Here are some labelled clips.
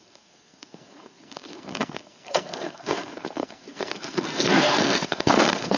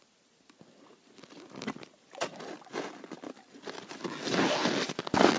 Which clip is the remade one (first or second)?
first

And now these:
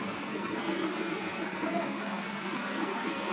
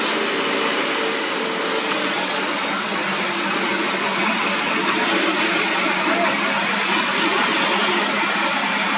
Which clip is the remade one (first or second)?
first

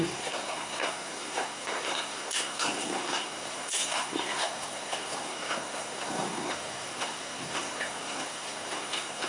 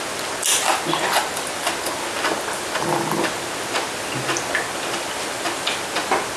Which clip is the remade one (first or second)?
first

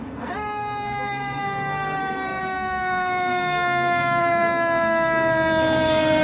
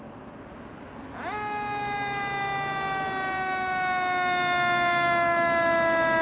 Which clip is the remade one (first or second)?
first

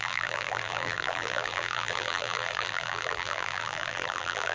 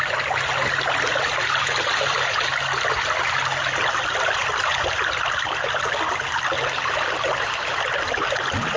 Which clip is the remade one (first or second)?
first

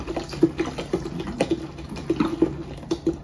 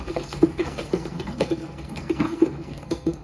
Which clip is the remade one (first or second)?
second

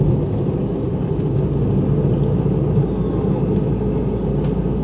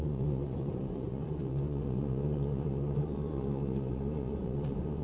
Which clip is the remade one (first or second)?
second